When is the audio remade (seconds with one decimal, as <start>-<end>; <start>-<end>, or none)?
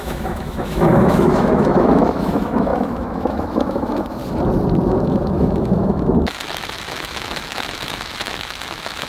0.0-4.2; 5.0-9.1